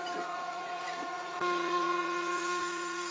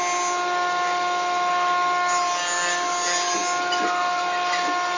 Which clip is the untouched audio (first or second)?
second